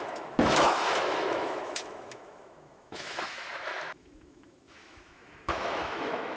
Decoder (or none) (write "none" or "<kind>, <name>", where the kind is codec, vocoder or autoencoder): autoencoder, DAC-VAE